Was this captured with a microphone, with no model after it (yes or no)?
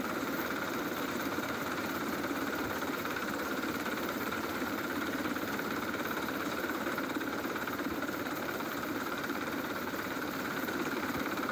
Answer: no